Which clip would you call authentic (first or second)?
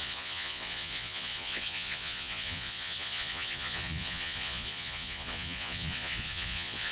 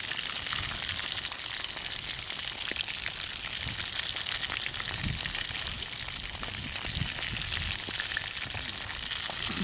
second